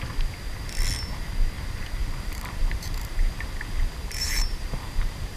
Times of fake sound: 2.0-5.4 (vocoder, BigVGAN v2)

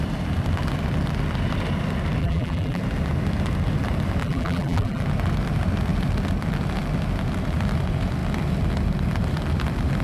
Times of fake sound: 2.2-2.8 (vocoder, BigVGAN v2); 4.2-5.0

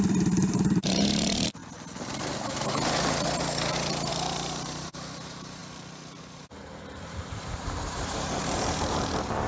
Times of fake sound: 0.0-1.6 (vocoder, BigVGAN v2); 4.1-5.6; 6.2-9.5

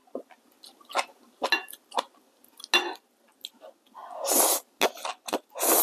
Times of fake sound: none

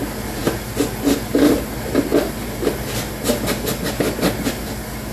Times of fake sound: none

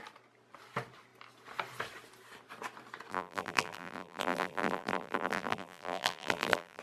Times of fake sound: 3.1-6.8 (vocoder, BigVGAN v2)

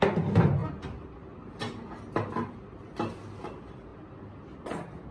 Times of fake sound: none